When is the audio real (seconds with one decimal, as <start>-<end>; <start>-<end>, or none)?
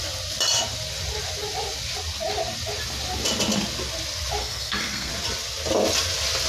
0.0-4.4; 5.1-6.5